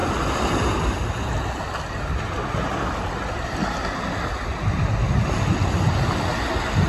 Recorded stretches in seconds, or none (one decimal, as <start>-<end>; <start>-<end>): 0.0-6.9